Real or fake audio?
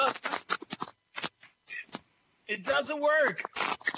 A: real